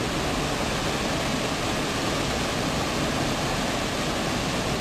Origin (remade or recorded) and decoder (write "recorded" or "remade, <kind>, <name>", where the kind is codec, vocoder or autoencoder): recorded